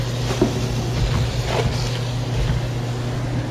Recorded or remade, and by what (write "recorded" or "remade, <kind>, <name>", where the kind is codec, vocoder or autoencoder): recorded